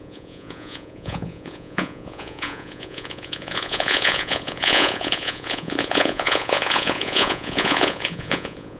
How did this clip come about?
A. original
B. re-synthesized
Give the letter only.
B